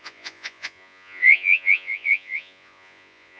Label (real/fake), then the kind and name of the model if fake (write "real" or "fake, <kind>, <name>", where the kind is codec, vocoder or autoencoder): fake, vocoder, Vocos